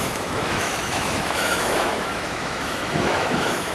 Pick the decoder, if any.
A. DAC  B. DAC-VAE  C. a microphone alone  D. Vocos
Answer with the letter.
B